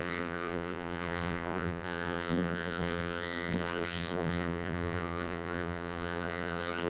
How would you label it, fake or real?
fake